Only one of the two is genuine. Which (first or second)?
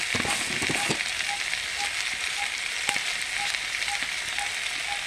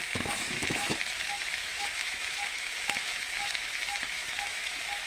first